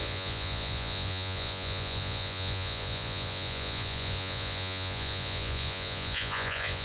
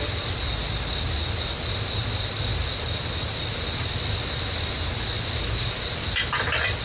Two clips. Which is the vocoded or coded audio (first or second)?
first